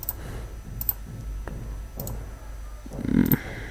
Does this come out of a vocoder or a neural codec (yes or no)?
no